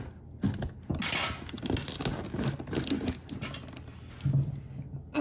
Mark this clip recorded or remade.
recorded